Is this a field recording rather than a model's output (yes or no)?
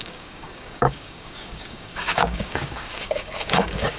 no